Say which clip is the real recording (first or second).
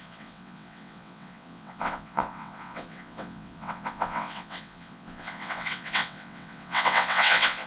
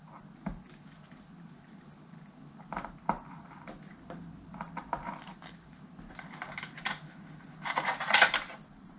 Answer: second